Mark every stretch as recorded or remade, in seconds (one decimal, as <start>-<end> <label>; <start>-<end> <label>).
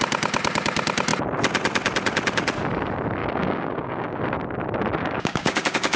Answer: 0.0-3.2 recorded; 3.2-4.2 remade; 4.2-5.0 recorded; 5.0-6.0 remade